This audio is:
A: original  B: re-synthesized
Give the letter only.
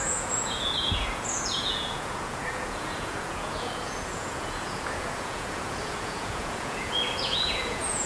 B